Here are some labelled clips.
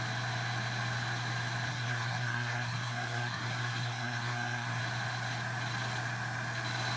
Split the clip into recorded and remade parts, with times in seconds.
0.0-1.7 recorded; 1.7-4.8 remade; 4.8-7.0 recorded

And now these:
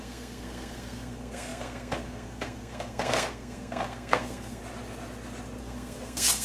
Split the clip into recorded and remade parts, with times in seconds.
0.0-4.6 remade; 4.6-5.6 recorded; 5.6-6.4 remade

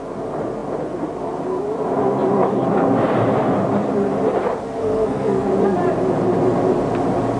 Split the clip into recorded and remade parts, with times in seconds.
0.0-4.8 recorded; 4.8-5.5 remade; 5.5-7.4 recorded

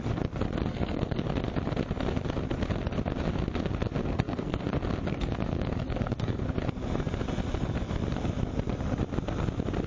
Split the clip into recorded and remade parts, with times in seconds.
0.0-0.7 recorded; 0.7-1.2 remade; 1.2-4.0 recorded; 4.0-4.6 remade; 4.6-5.1 recorded; 5.1-6.4 remade; 6.4-9.9 recorded

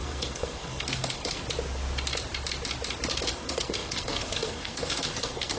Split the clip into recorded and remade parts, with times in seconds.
0.0-1.4 remade; 1.4-3.3 recorded; 3.3-5.6 remade

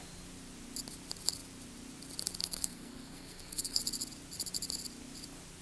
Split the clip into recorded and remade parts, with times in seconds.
0.0-2.4 recorded; 2.4-3.8 remade; 3.8-5.6 recorded